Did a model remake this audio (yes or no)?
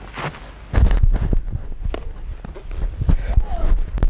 no